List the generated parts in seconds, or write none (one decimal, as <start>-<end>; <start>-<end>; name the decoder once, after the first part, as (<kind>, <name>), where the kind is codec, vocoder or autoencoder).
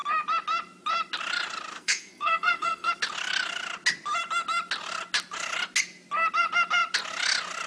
1.7-2.9 (codec, SNAC)